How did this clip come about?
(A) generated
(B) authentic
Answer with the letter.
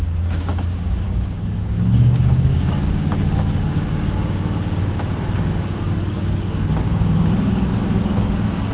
A